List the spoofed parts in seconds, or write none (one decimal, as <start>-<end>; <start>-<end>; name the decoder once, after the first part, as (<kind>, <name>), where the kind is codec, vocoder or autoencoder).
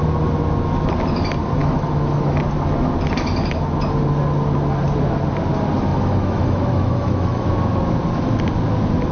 1.6-2.4 (autoencoder, DAC-VAE); 5.9-7.5